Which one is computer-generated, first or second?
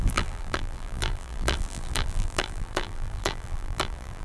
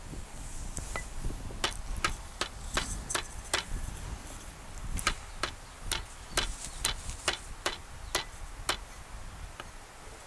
first